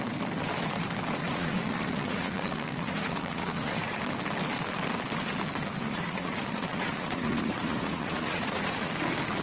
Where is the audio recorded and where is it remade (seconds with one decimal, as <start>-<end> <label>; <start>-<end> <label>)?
0.0-1.2 recorded; 1.2-4.0 remade; 4.0-5.8 recorded; 5.8-8.9 remade; 8.9-9.4 recorded